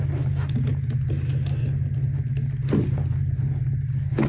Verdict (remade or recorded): recorded